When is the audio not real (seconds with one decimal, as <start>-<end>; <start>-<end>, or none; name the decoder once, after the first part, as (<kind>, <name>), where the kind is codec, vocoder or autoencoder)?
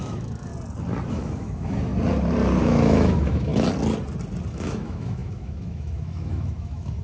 0.0-0.5 (autoencoder, DAC-VAE); 1.1-1.9; 2.6-3.5; 4.5-7.0